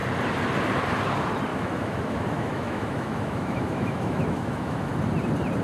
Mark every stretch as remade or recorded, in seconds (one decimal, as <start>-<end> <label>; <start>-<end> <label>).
0.0-1.5 recorded; 1.5-4.9 remade; 4.9-5.6 recorded